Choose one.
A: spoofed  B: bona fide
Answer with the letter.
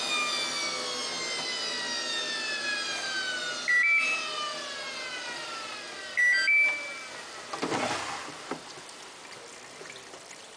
B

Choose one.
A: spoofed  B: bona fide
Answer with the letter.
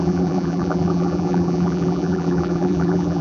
A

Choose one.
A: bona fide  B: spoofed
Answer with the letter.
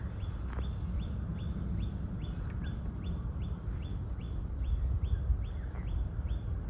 A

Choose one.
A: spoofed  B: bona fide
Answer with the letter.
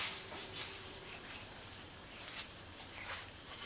A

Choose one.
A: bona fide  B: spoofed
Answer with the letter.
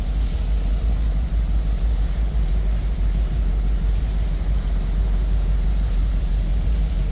B